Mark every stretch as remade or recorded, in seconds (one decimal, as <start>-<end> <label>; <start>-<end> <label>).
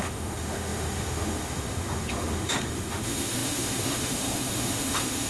0.0-5.3 remade